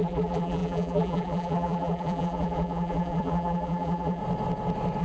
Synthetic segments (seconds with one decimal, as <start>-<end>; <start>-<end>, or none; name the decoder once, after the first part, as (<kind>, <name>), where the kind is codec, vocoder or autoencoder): 0.0-4.2 (vocoder, BigVGAN v2)